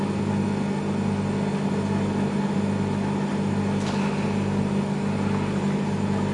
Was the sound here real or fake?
real